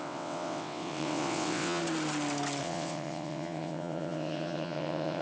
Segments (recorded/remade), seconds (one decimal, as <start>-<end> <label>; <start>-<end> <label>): 0.0-1.8 remade; 1.8-2.6 recorded; 2.6-5.2 remade